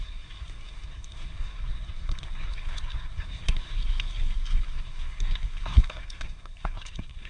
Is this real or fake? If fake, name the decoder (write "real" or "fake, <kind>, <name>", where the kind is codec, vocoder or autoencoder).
fake, codec, SNAC